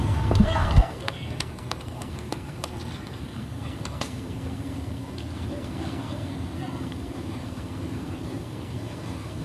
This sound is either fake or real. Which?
fake